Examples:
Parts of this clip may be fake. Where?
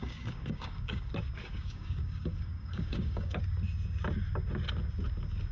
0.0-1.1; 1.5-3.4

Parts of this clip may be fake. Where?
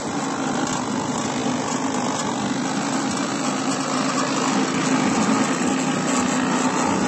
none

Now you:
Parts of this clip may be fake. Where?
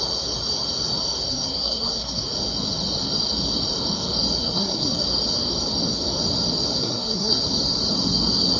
1.3-2.2; 4.4-4.9; 6.8-7.4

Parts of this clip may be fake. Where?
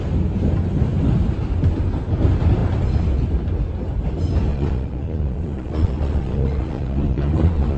4.5-7.8